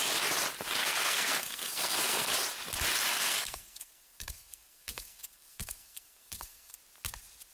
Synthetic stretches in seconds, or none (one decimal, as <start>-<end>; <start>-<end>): 0.8-2.3; 3.1-6.8